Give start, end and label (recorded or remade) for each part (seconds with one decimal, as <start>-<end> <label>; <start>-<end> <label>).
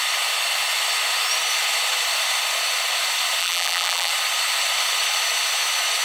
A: 0.0-3.4 recorded; 3.4-4.1 remade; 4.1-6.0 recorded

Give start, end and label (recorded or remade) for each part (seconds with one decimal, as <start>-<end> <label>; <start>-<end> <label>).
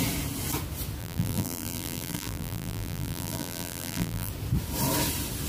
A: 0.0-1.0 recorded; 1.0-4.3 remade; 4.3-5.5 recorded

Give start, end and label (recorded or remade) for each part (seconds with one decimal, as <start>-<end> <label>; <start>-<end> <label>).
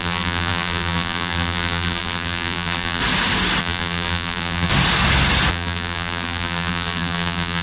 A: 0.0-3.0 remade; 3.0-3.6 recorded; 3.6-4.7 remade; 4.7-5.5 recorded; 5.5-7.6 remade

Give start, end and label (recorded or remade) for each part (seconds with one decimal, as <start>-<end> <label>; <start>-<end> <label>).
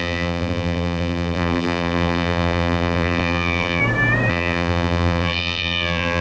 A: 0.0-3.8 remade; 3.8-4.3 recorded; 4.3-6.2 remade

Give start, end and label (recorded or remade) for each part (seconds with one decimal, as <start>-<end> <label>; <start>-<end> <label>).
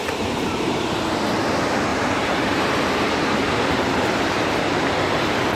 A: 0.0-1.2 remade; 1.2-1.9 recorded; 1.9-2.6 remade; 2.6-5.6 recorded